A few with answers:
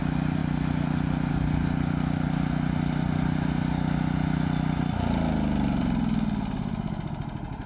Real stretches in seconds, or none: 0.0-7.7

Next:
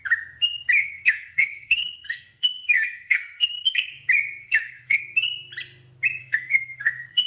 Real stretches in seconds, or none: 0.0-0.8; 3.9-4.4; 5.0-6.2

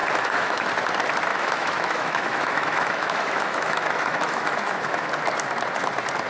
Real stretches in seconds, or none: 0.7-1.3; 5.1-6.3

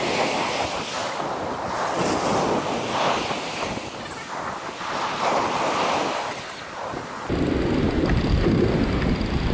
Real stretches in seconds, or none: 0.0-9.5